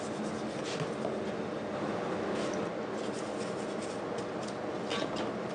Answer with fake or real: real